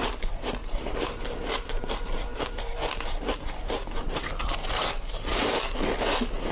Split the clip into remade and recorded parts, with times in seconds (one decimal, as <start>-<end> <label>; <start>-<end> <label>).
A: 0.0-0.6 recorded; 0.6-1.9 remade; 1.9-2.3 recorded; 2.3-3.0 remade; 3.0-4.6 recorded; 4.6-5.6 remade; 5.6-6.5 recorded